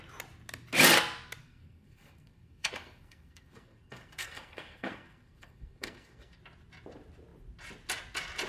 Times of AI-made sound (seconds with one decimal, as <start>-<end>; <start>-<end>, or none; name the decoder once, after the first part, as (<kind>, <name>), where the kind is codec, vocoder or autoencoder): 1.4-6.4 (codec, SNAC)